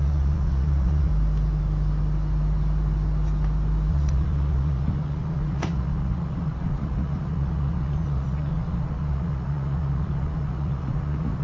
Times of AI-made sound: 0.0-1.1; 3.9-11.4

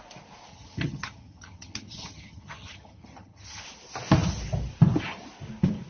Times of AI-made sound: 0.5-3.6

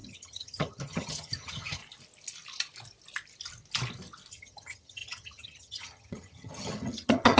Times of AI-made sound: 0.0-1.8; 4.3-7.4

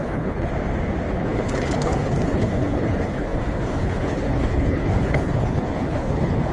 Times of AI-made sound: 0.0-0.5; 1.1-6.5

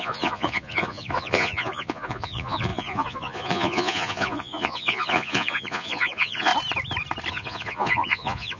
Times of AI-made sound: 0.0-6.5; 7.3-8.6

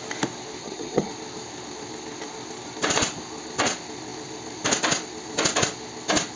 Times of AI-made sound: 0.6-1.1